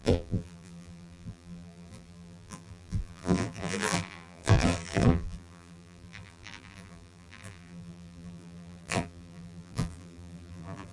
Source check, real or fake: fake